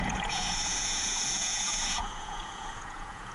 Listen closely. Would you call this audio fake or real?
fake